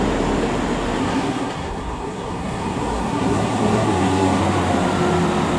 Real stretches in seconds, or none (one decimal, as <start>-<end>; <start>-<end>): 0.0-1.0; 4.4-5.6